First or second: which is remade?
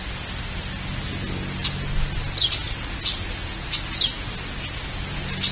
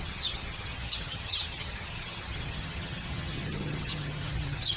second